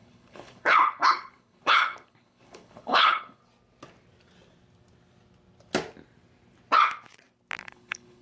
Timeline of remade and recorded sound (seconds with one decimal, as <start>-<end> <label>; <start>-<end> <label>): 0.0-3.4 remade; 3.4-7.6 recorded; 7.6-8.2 remade